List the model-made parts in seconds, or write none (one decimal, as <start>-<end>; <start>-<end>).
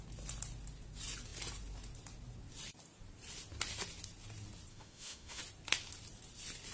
4.7-5.4